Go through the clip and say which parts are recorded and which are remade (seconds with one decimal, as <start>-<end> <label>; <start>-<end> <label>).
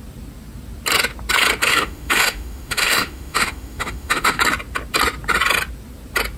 0.0-1.7 recorded; 1.7-4.4 remade; 4.4-6.4 recorded